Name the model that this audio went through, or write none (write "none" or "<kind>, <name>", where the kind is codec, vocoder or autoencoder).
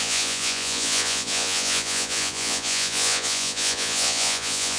vocoder, Vocos